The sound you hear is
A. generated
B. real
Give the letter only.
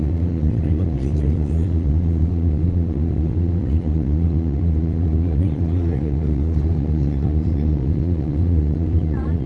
A